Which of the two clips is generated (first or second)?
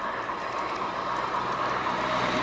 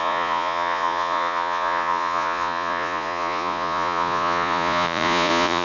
second